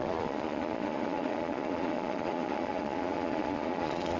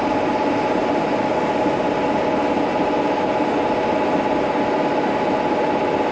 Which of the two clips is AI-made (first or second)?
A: first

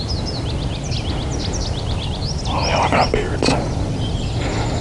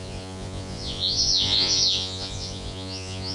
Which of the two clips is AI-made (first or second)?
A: second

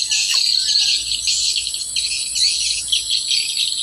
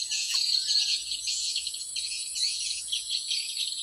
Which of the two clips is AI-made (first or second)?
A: second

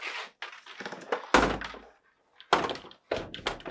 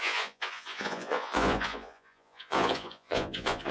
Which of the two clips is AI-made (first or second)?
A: second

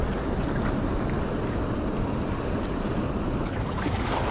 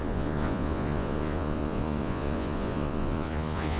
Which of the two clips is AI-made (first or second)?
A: second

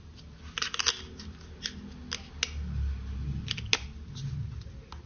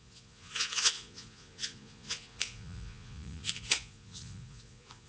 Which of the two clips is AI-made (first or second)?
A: second